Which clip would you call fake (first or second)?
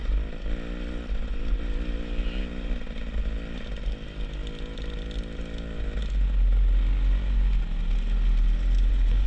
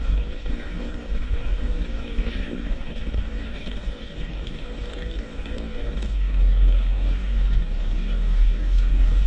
second